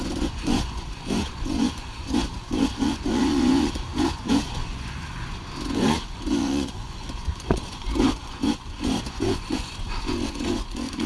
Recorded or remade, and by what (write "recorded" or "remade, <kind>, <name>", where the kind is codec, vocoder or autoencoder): remade, vocoder, Vocos